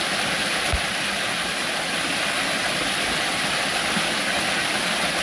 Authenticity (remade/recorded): recorded